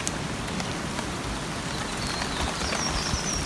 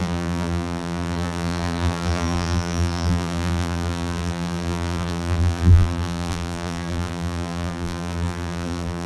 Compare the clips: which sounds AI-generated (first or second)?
second